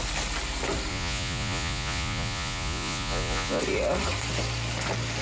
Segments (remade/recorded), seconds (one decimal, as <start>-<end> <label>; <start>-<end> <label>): 0.0-0.9 recorded; 0.9-3.6 remade; 3.6-5.2 recorded